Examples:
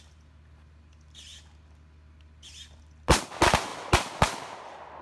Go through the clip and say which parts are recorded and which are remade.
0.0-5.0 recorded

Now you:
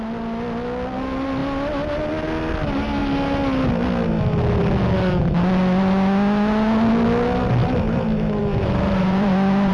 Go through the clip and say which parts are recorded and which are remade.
0.0-8.4 recorded; 8.4-9.7 remade

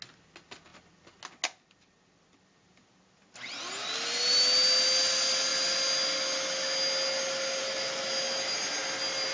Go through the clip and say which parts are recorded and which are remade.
0.0-9.3 recorded